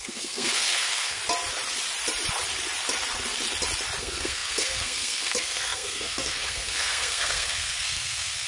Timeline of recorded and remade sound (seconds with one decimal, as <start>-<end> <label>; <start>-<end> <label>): 0.0-1.2 remade; 1.2-4.0 recorded; 4.0-8.5 remade

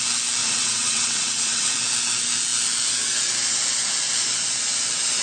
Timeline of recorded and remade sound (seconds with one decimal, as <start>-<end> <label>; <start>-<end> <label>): 0.0-0.4 recorded; 0.4-1.7 remade; 1.7-5.2 recorded

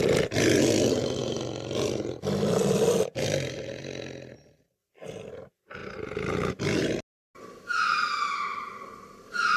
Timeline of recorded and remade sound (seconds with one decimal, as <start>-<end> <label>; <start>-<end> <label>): 0.0-8.5 recorded; 8.5-9.6 remade

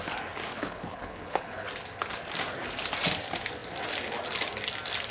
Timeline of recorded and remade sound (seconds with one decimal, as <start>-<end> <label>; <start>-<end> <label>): 0.0-0.5 recorded; 0.5-1.7 remade; 1.7-5.1 recorded

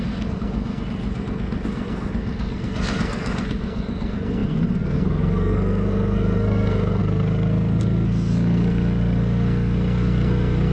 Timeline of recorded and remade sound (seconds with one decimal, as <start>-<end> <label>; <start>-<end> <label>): 0.0-10.7 remade

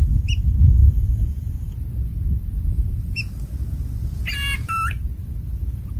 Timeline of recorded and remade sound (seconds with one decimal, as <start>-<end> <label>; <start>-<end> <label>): 0.0-0.8 recorded; 0.8-3.3 remade; 3.3-6.0 recorded